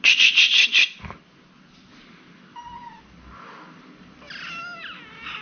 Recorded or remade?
recorded